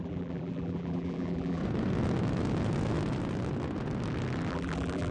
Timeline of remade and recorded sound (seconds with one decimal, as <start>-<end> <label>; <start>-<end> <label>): 0.0-1.6 remade; 1.6-4.5 recorded; 4.5-5.1 remade